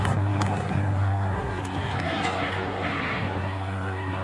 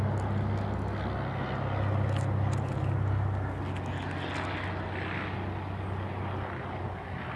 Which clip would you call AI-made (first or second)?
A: first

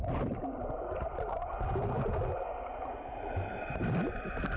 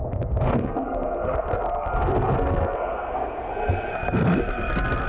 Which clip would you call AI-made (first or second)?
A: second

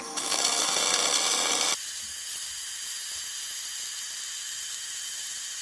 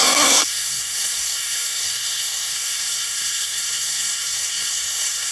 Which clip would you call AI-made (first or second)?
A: second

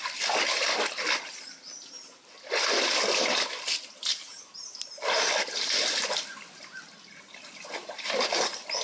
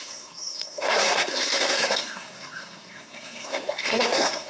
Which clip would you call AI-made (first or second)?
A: second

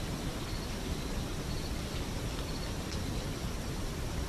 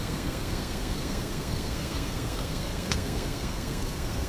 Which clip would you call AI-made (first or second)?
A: second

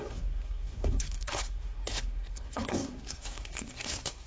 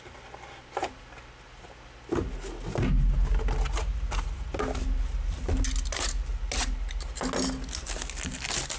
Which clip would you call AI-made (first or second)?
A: first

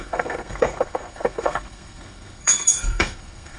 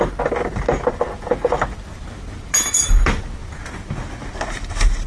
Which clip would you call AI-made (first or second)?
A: first